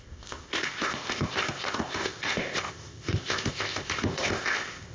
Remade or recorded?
remade